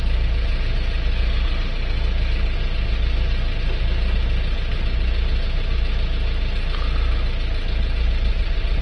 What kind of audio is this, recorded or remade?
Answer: recorded